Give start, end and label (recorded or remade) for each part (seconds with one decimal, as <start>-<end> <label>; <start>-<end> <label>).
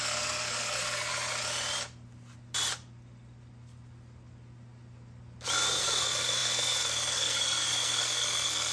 0.0-1.1 remade; 1.1-5.8 recorded; 5.8-8.7 remade